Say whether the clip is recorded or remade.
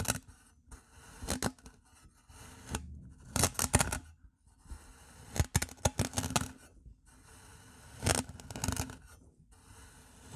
recorded